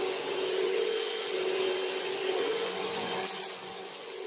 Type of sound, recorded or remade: remade